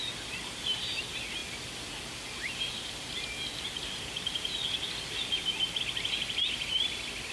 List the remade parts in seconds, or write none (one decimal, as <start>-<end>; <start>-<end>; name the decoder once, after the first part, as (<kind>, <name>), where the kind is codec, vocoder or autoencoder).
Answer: 1.4-5.8 (vocoder, BigVGAN v2)